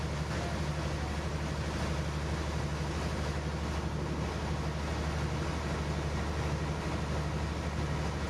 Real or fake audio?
real